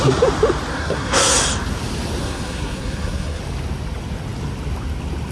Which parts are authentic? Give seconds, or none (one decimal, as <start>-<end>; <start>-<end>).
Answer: 0.0-0.7; 1.4-2.2; 3.4-5.3